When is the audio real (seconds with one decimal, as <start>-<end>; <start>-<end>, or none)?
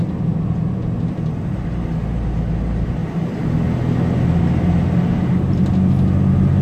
0.0-6.6